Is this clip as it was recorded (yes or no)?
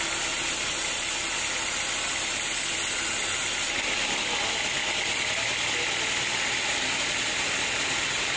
yes